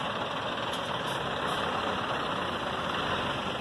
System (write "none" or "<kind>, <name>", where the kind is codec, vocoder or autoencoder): none